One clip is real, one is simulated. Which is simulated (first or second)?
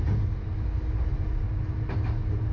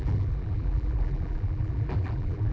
second